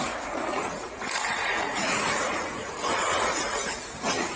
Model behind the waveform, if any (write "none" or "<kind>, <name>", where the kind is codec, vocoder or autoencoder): vocoder, Vocos